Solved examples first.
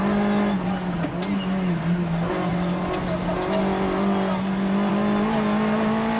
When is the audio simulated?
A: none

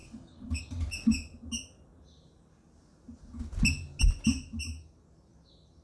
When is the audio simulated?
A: 0.0-0.6 (codec, DAC)

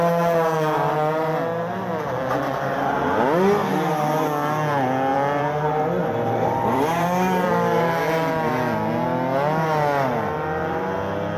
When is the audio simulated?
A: 5.1-8.3 (vocoder, BigVGAN v2)